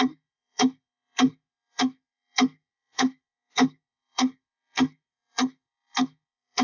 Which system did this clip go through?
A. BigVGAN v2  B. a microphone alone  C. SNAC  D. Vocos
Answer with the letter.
C